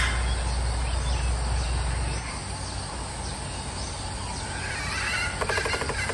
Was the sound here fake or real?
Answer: real